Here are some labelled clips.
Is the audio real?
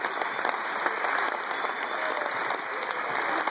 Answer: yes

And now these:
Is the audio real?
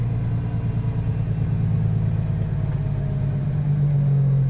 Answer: yes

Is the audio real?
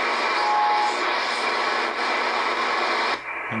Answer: yes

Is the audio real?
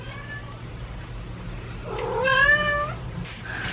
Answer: yes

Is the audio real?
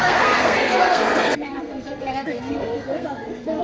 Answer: no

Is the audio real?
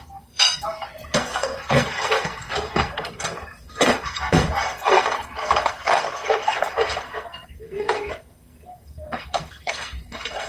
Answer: no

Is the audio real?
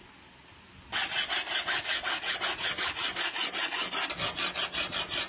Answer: yes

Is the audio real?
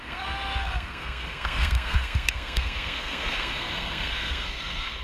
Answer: no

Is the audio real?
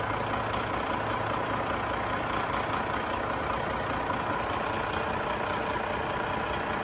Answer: yes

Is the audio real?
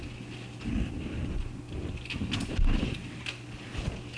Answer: yes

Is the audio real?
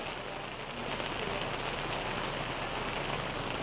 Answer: yes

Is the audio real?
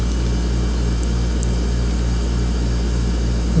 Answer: yes